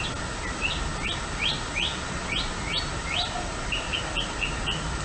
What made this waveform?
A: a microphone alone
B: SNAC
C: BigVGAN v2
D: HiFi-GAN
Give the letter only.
A